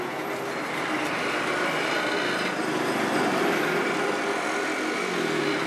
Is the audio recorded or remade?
recorded